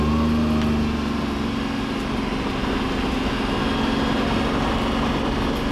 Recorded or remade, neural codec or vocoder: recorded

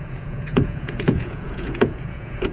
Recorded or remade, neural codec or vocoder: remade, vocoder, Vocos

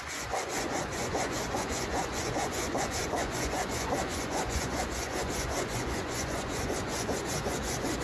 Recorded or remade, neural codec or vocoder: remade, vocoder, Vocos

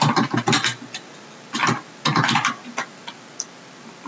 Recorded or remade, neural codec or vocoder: recorded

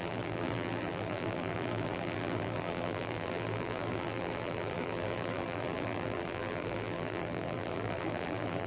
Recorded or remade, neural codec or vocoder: remade, vocoder, BigVGAN v2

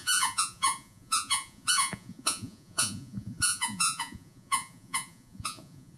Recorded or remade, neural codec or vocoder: remade, vocoder, Vocos